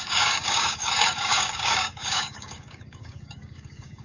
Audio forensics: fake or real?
fake